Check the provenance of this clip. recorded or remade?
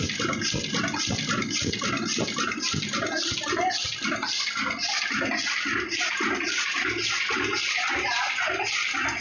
recorded